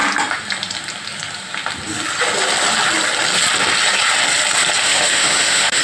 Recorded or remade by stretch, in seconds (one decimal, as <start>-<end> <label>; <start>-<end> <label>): 0.0-4.8 recorded; 4.8-5.8 remade